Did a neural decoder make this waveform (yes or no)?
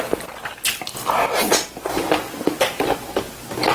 no